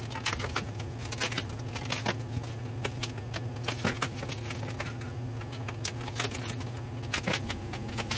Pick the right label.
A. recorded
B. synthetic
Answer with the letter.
A